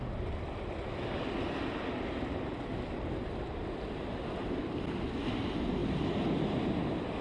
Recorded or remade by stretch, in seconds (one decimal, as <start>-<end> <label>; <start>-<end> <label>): 0.0-7.2 recorded